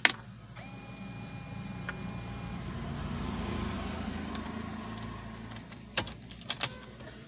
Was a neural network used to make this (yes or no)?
no